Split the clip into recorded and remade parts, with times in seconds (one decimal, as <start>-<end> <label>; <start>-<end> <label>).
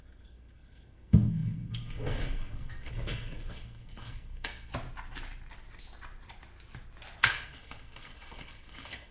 0.0-4.7 remade; 4.7-7.2 recorded; 7.2-9.1 remade